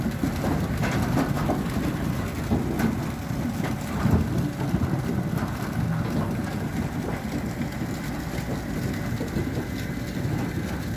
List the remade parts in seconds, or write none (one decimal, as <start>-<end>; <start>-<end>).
none